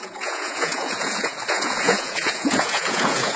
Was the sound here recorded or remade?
remade